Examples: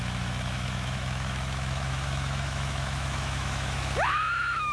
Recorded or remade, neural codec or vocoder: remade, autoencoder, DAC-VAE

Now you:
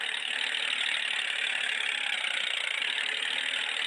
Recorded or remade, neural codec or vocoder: recorded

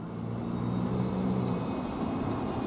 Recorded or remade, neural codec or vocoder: recorded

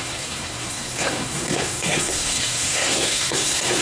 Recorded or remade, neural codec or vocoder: remade, codec, SNAC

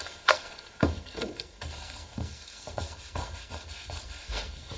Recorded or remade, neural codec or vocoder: remade, codec, SNAC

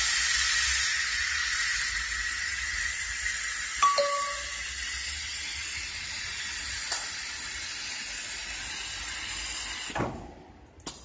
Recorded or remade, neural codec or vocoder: recorded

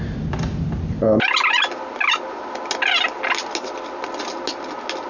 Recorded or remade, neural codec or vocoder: recorded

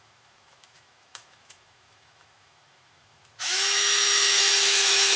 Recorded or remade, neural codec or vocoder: remade, autoencoder, DAC-VAE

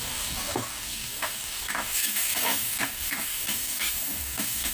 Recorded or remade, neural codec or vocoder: remade, codec, DAC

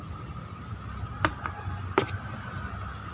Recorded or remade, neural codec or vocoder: recorded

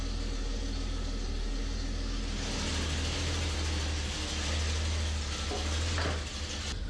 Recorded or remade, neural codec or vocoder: recorded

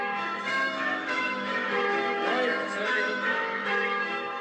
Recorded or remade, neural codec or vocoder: remade, autoencoder, DAC-VAE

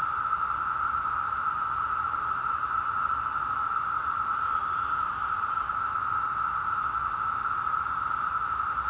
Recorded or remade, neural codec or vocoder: recorded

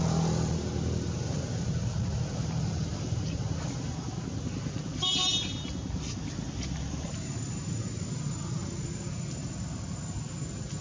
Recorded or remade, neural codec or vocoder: recorded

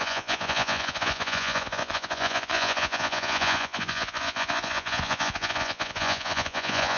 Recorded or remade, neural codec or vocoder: remade, vocoder, Vocos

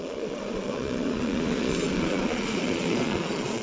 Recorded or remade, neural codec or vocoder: remade, vocoder, Vocos